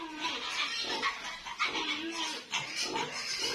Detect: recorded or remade recorded